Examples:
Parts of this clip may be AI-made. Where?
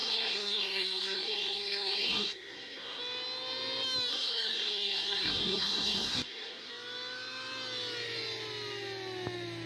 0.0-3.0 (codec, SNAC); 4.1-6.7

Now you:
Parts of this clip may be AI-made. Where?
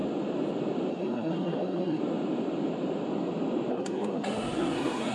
0.9-2.0 (codec, SNAC); 3.7-5.1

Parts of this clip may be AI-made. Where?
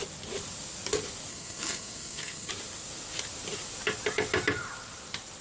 1.3-2.5 (codec, SNAC)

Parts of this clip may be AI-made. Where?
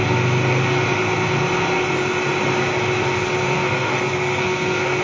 3.4-5.0 (codec, SNAC)